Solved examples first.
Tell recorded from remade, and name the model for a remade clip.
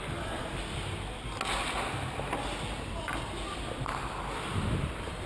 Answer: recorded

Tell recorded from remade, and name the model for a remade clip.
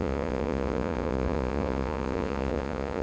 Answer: remade, vocoder, Vocos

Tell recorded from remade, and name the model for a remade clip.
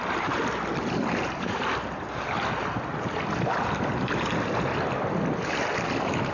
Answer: recorded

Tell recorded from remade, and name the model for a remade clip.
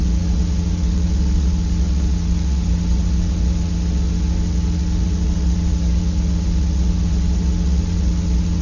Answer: remade, vocoder, WaveNeXt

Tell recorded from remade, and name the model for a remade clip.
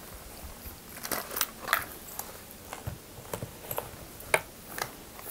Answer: recorded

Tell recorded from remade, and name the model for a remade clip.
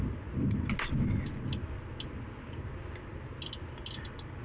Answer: recorded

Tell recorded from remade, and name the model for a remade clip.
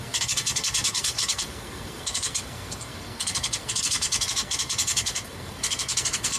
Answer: remade, codec, SNAC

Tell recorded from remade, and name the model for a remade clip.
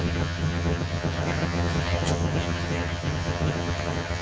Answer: remade, vocoder, HiFi-GAN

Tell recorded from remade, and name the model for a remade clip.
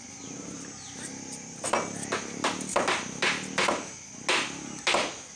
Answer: recorded